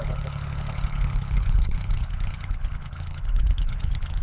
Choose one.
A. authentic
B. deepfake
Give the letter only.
B